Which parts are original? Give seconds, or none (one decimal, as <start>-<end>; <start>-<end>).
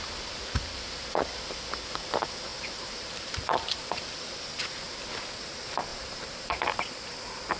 0.0-2.5; 3.8-5.9; 6.8-7.6